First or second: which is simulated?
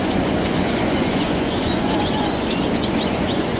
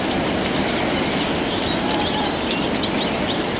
first